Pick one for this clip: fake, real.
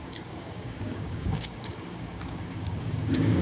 fake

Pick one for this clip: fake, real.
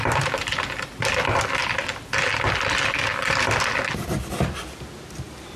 real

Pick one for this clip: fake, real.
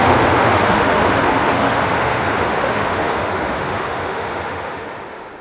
fake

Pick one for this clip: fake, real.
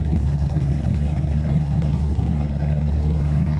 fake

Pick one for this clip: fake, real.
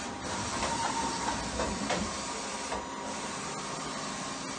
real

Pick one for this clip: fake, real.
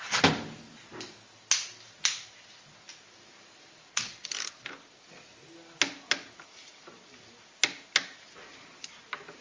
real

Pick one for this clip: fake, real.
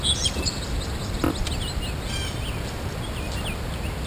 real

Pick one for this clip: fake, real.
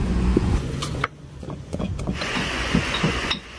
fake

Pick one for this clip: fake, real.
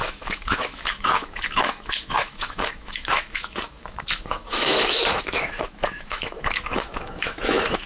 fake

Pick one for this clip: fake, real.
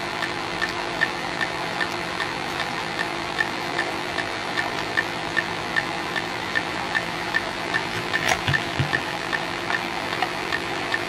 fake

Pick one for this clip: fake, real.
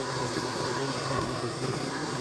fake